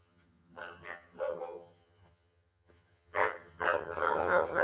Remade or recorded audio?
remade